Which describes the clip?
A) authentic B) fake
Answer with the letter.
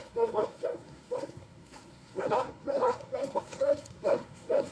B